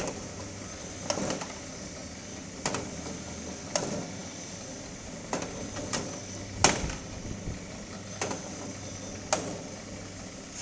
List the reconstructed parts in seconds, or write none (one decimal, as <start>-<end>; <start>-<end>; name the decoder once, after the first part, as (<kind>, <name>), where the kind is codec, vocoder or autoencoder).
none